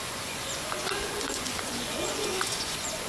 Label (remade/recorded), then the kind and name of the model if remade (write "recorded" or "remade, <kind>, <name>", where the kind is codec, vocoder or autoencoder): remade, vocoder, Vocos